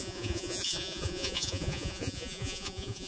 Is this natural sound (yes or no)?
no